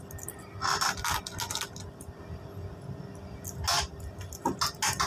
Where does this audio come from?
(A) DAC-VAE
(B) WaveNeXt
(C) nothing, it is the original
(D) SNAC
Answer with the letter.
C